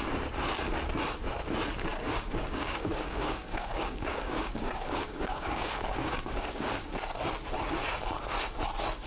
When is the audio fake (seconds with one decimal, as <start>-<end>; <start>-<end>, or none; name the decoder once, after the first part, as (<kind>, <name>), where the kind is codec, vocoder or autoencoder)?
1.9-6.9 (codec, DAC)